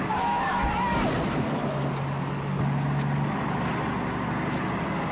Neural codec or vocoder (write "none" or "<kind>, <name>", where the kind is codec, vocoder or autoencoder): none